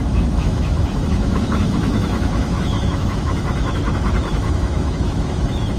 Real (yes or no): no